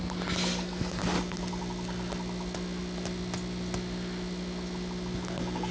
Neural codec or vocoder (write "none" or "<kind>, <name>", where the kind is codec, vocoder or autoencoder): none